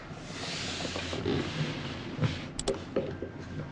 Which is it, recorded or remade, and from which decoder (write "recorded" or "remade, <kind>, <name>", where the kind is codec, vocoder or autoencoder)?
recorded